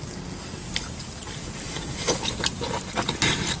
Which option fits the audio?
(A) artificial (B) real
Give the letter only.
A